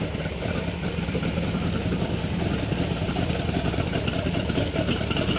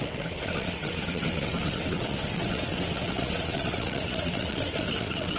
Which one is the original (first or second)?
first